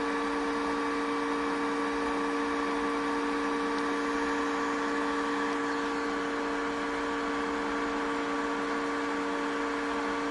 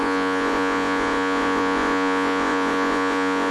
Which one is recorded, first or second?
first